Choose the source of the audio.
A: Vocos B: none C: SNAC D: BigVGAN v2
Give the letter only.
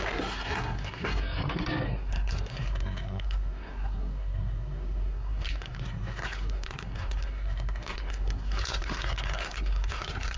C